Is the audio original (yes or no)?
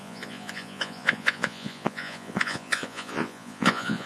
no